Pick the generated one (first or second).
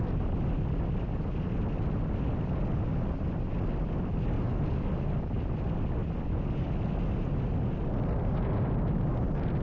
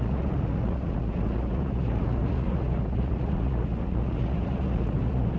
second